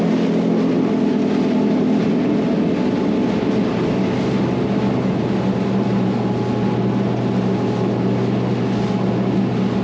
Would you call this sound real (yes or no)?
yes